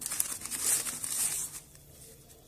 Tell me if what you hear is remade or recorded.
recorded